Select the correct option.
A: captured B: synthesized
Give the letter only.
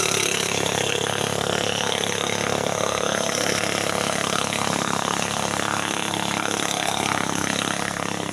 B